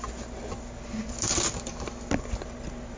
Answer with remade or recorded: recorded